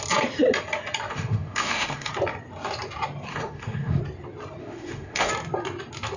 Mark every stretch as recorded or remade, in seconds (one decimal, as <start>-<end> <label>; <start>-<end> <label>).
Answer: 0.0-1.1 recorded; 1.1-2.1 remade; 2.1-3.3 recorded; 3.3-4.0 remade; 4.0-4.6 recorded; 4.6-5.3 remade; 5.3-6.2 recorded